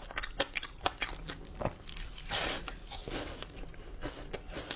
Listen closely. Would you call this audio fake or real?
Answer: real